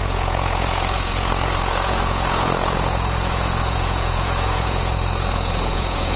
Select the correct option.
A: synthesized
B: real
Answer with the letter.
A